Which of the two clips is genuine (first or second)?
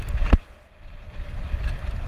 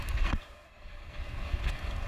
first